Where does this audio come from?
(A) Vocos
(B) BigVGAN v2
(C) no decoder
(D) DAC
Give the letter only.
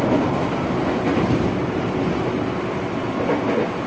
C